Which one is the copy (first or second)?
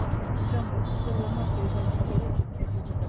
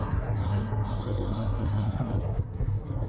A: second